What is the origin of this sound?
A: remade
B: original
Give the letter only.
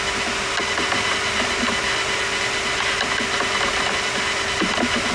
B